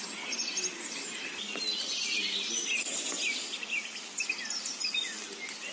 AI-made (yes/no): no